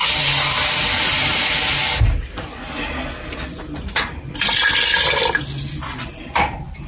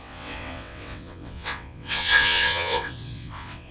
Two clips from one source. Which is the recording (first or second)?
first